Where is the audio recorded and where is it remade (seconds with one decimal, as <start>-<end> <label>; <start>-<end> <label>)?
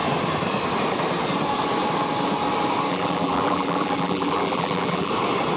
0.0-2.9 recorded; 2.9-5.1 remade; 5.1-5.6 recorded